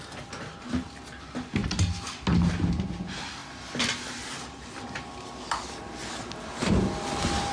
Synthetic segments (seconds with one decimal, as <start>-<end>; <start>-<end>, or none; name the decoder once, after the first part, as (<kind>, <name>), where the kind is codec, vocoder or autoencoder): none